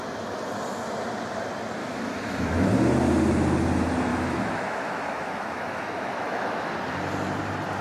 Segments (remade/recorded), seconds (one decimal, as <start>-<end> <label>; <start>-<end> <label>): 0.0-1.8 recorded; 1.8-2.7 remade; 2.7-4.1 recorded; 4.1-6.7 remade; 6.7-7.8 recorded